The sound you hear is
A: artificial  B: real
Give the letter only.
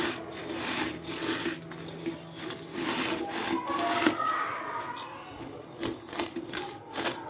B